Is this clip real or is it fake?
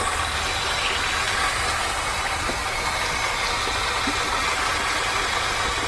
real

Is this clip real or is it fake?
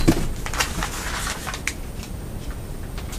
real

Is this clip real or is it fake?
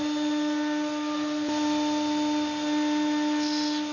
real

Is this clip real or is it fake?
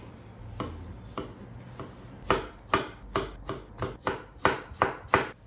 real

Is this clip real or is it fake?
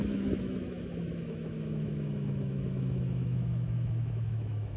fake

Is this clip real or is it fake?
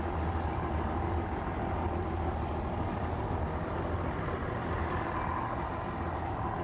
real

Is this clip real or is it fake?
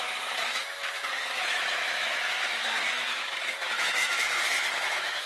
fake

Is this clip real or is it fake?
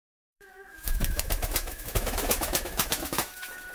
fake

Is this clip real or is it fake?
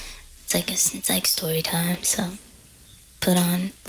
real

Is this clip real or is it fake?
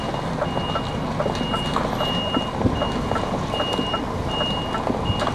real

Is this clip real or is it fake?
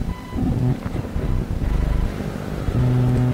real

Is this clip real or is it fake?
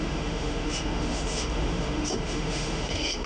fake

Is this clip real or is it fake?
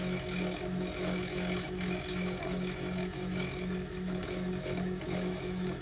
fake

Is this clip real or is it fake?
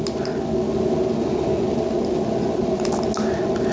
real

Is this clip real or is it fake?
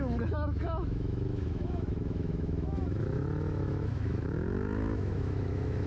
fake